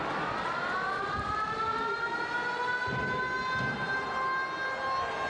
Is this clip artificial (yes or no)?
no